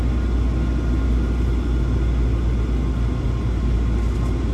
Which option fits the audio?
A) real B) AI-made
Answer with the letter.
A